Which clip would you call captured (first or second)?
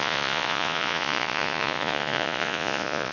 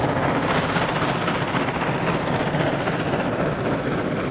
second